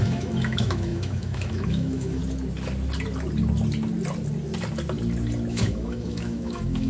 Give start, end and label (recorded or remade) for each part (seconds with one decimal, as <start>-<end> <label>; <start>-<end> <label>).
0.0-2.2 remade; 2.2-5.5 recorded; 5.5-6.9 remade